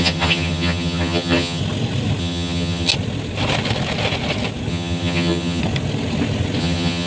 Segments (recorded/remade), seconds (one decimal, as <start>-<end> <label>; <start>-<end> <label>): 0.0-1.6 remade; 1.6-2.2 recorded; 2.2-2.9 remade; 2.9-4.7 recorded; 4.7-5.6 remade; 5.6-6.6 recorded; 6.6-7.1 remade